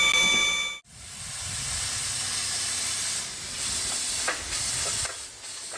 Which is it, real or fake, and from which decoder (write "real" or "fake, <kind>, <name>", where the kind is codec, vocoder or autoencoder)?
real